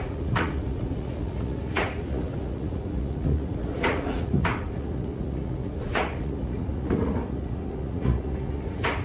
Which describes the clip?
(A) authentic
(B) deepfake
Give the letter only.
B